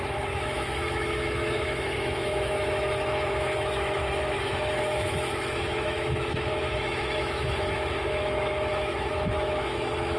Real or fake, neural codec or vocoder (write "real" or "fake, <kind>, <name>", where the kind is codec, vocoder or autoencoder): fake, autoencoder, DAC-VAE